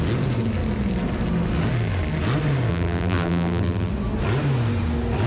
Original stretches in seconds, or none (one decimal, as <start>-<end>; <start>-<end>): 0.0-2.7; 3.9-5.3